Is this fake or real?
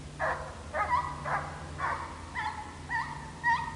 real